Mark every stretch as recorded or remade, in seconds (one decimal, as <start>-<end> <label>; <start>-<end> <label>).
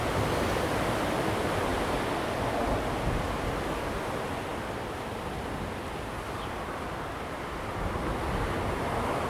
0.0-9.3 recorded